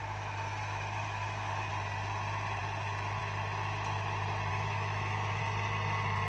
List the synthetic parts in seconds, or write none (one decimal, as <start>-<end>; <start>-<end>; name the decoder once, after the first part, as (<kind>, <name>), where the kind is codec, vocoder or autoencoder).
0.0-1.7 (autoencoder, DAC-VAE); 4.5-5.4